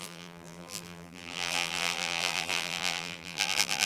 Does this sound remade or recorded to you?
remade